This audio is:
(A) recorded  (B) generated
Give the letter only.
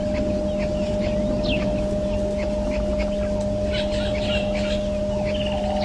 A